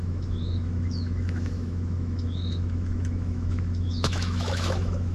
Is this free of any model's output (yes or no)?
no